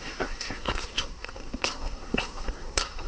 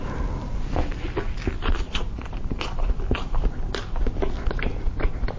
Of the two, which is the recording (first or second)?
second